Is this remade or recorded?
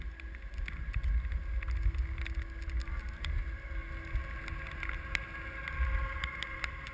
recorded